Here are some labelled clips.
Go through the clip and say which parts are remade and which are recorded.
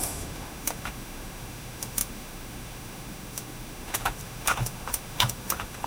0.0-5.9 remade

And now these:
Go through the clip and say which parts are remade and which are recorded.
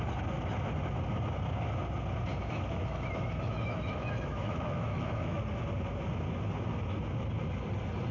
0.0-2.3 recorded; 2.3-5.4 remade; 5.4-8.1 recorded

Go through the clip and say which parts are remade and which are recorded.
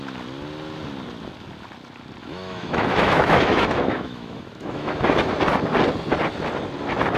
0.0-2.2 recorded; 2.2-5.3 remade; 5.3-7.2 recorded